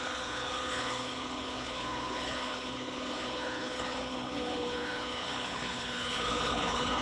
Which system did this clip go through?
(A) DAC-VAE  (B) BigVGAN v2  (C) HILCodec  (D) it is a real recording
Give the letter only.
C